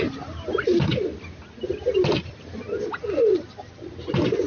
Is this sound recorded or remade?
recorded